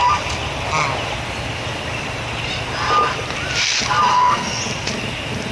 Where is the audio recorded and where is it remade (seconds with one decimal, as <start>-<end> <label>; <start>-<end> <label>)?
0.0-4.1 recorded; 4.1-4.6 remade; 4.6-5.5 recorded